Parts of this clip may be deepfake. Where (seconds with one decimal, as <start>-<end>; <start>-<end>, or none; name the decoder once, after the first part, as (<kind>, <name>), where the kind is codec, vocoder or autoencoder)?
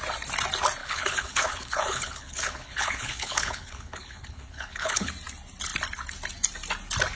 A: 0.8-5.1 (codec, HILCodec)